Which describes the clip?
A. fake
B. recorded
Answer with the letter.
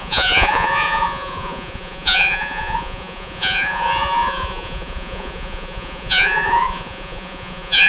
A